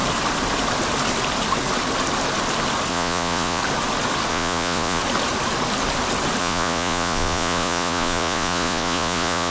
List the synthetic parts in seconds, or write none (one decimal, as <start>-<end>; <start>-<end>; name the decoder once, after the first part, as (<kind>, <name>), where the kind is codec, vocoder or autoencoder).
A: 2.9-3.6 (vocoder, Vocos); 4.3-5.0; 6.4-9.5